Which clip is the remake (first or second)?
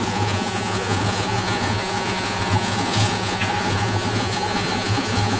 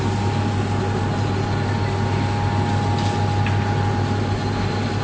first